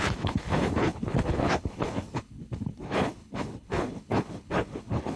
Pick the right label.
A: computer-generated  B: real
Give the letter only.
A